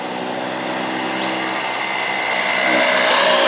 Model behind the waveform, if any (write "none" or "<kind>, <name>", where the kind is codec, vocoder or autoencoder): none